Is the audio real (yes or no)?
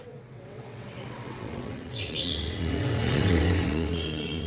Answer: no